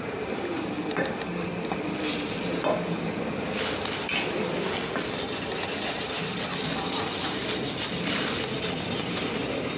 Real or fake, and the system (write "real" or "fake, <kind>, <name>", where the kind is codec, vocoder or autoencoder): real